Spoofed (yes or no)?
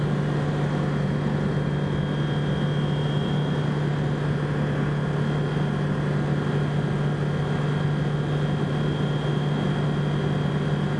no